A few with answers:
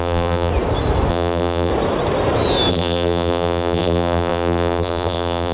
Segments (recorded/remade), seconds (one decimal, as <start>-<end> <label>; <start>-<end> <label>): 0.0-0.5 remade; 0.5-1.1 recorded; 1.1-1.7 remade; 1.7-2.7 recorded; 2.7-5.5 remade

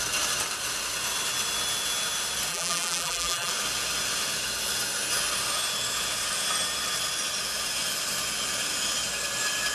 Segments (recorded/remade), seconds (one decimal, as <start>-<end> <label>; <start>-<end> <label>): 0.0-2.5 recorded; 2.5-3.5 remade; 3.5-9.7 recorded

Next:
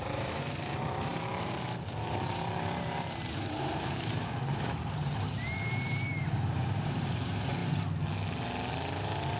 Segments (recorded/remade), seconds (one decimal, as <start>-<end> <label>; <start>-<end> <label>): 0.0-7.6 remade; 7.6-9.4 recorded

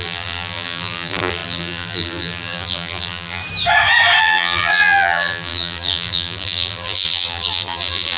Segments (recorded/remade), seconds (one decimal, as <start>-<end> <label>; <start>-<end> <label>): 0.0-3.4 remade; 3.4-4.2 recorded; 4.2-8.2 remade